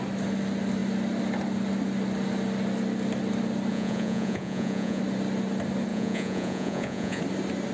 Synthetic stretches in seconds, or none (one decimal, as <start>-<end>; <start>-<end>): 3.7-5.0; 5.9-7.2